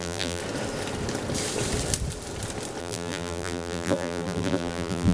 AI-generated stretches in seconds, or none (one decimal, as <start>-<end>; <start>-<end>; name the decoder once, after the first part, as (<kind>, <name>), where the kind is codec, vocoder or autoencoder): 0.0-0.4 (vocoder, BigVGAN v2); 2.8-5.1